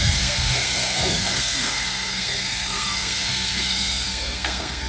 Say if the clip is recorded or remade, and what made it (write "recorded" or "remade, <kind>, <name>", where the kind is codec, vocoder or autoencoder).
remade, codec, SNAC